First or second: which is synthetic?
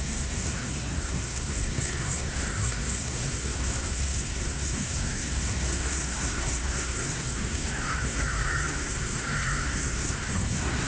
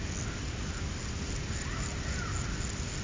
first